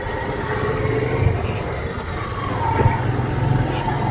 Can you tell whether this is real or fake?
real